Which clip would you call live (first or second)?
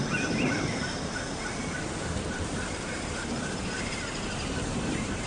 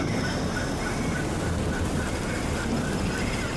second